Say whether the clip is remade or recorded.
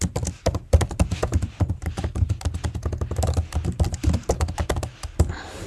recorded